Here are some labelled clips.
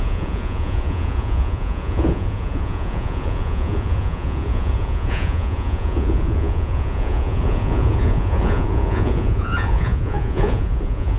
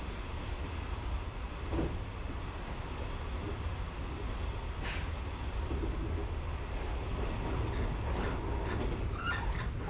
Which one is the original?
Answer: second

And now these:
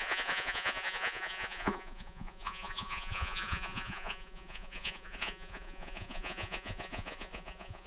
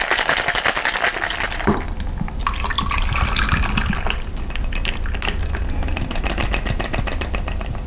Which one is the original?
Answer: second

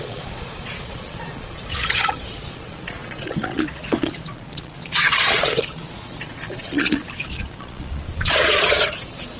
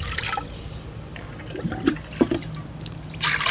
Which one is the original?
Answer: second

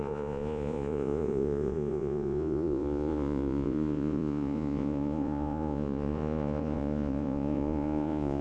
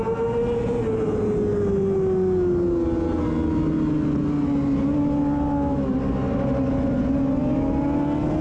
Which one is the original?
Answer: second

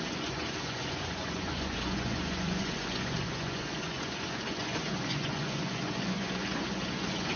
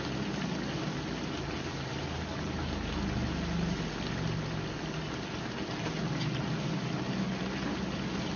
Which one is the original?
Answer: second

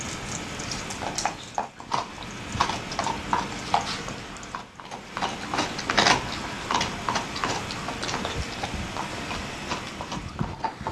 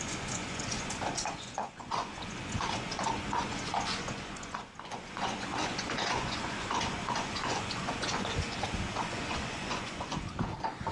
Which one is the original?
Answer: first